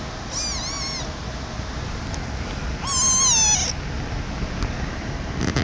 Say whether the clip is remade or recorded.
recorded